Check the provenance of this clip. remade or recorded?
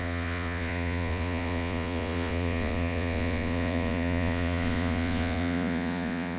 remade